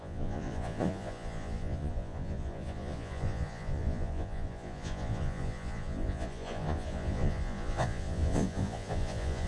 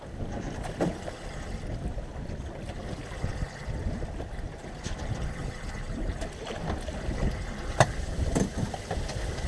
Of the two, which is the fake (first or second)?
first